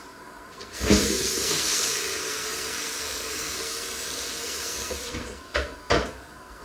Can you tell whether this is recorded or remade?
remade